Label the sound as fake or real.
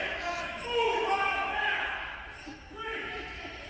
fake